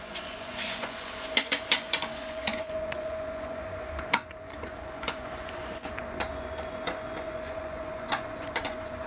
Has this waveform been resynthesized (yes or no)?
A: yes